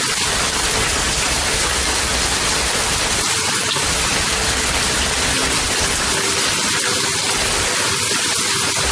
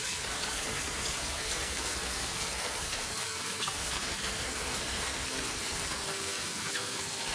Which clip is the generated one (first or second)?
second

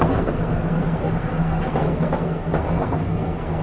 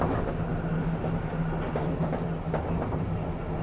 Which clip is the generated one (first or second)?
first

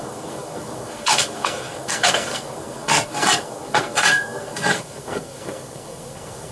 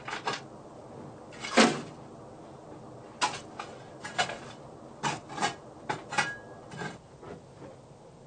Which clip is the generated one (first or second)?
first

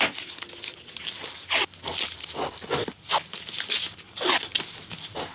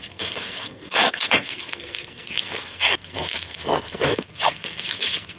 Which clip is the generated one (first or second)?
second